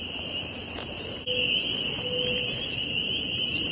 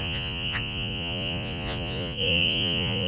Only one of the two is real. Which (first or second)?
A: first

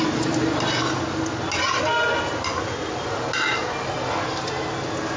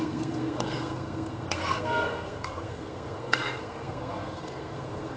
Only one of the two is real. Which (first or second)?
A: first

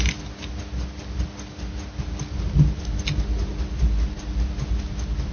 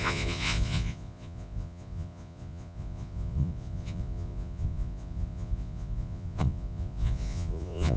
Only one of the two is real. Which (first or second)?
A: first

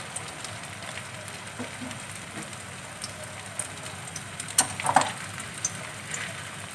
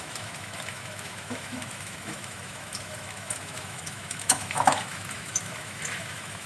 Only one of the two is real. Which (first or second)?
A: first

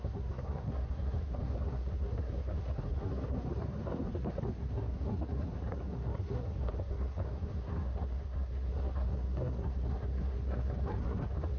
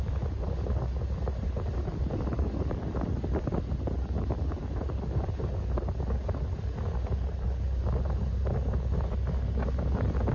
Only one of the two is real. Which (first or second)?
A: second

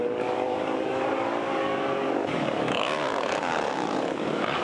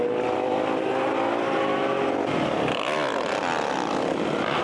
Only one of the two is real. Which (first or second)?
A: second